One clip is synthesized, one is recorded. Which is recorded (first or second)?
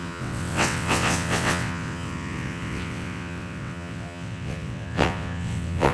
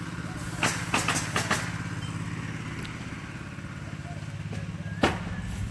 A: second